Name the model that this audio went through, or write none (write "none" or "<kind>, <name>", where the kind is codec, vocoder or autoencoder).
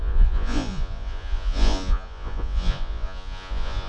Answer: vocoder, Vocos